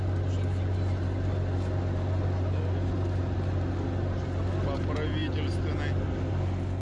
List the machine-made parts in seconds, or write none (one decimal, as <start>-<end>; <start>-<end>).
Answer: none